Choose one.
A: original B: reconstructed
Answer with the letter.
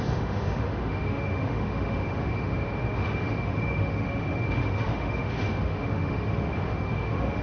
B